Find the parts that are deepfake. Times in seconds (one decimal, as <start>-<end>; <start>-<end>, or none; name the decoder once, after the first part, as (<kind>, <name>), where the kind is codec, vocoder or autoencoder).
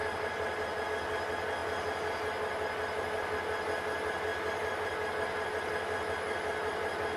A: none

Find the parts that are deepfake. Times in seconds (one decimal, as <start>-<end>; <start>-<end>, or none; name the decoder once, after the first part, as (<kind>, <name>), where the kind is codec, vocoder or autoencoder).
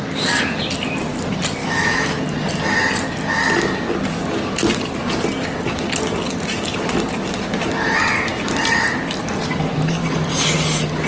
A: 1.6-2.2 (autoencoder, DAC-VAE)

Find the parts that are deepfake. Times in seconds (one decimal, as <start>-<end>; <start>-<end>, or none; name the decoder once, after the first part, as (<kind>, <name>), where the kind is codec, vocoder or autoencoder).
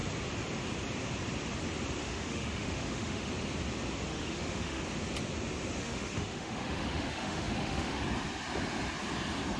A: 2.0-3.3 (autoencoder, DAC-VAE); 4.1-4.8; 5.8-8.0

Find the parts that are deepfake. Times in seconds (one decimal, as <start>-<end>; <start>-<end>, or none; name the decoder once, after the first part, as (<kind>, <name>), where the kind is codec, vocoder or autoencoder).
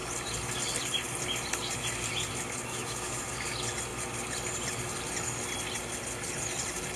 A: 2.7-3.2 (autoencoder, DAC-VAE)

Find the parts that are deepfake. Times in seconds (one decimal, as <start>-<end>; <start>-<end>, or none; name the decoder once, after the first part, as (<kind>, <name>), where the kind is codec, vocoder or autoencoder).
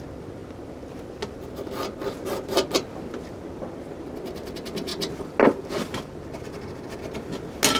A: none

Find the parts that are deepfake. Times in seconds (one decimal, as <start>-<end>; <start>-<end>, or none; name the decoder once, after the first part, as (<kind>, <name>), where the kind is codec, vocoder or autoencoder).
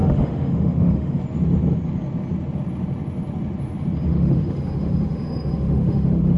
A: 0.0-1.2 (autoencoder, DAC-VAE); 4.1-6.4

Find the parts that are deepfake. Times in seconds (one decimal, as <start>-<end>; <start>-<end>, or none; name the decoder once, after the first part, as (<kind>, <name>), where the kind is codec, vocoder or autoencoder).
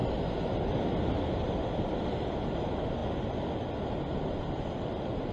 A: none